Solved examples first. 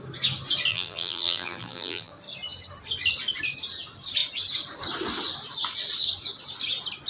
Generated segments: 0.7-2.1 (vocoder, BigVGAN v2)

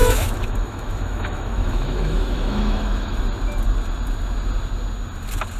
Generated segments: 0.0-3.2 (autoencoder, DAC-VAE)

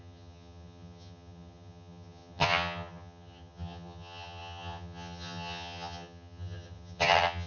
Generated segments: 0.0-7.5 (vocoder, HiFi-GAN)

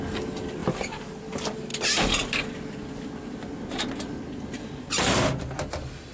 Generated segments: none

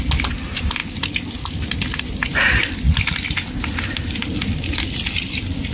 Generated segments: none